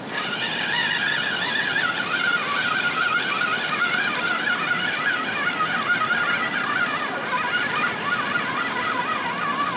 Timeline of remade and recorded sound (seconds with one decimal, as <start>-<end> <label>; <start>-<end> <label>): 0.0-0.8 remade; 0.8-2.0 recorded; 2.0-9.8 remade